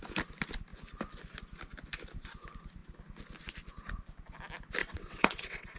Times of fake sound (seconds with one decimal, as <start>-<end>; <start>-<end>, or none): 4.8-5.8